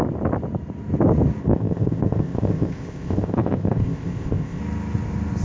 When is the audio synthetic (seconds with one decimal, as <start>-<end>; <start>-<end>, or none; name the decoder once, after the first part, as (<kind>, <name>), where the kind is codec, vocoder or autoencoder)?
1.4-4.6 (codec, ZipCodec)